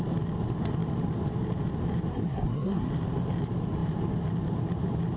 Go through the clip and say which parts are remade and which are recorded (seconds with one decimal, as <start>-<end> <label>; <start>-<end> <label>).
0.0-2.1 recorded; 2.1-2.9 remade; 2.9-5.2 recorded